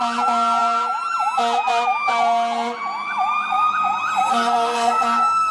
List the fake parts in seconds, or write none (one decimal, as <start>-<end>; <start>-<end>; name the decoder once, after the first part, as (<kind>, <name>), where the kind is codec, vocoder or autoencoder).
4.3-5.5 (codec, SNAC)